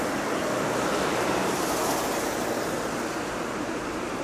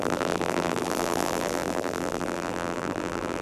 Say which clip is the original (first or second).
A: first